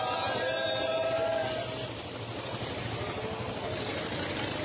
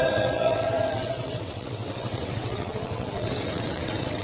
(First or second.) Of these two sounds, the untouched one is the first